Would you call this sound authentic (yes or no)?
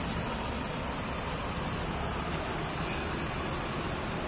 yes